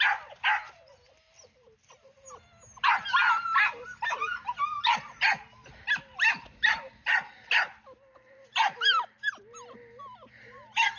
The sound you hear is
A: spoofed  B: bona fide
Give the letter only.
B